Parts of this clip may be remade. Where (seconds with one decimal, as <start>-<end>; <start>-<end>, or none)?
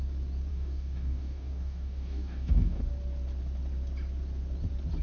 0.5-2.8